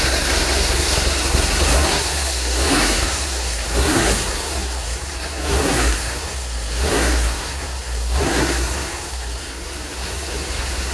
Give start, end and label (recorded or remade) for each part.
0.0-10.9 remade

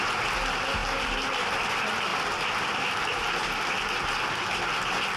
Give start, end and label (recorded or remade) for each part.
0.0-5.2 recorded

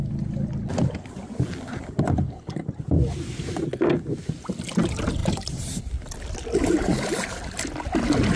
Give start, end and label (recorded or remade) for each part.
0.0-5.2 recorded; 5.2-5.8 remade; 5.8-8.4 recorded

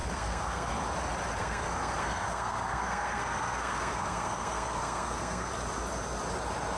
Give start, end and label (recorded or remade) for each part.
0.0-0.7 remade; 0.7-1.4 recorded; 1.4-5.5 remade; 5.5-6.8 recorded

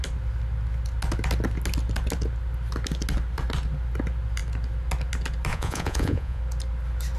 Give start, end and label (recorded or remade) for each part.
0.0-5.5 recorded; 5.5-6.4 remade; 6.4-7.2 recorded